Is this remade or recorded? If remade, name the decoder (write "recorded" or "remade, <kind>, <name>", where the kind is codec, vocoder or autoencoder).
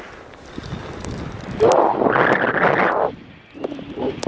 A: recorded